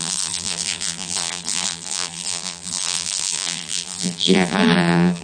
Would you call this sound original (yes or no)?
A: no